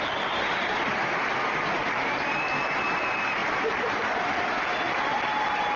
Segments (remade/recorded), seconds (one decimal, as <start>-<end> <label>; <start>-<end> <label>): 0.0-5.8 recorded